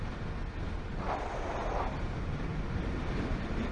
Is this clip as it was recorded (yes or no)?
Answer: yes